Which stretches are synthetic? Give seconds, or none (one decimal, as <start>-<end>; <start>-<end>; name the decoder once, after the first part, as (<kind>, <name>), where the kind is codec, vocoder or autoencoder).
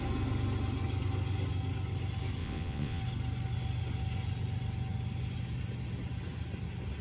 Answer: 2.4-3.0 (vocoder, WaveNeXt)